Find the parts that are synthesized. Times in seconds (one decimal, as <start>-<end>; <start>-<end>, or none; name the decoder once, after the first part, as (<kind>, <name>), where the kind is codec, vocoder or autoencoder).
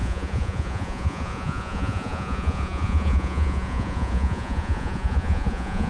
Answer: 0.0-5.9 (vocoder, Vocos)